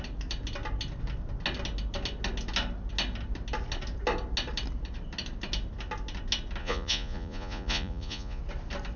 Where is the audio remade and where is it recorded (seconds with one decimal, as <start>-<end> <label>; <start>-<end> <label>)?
0.0-6.6 recorded; 6.6-8.4 remade; 8.4-9.0 recorded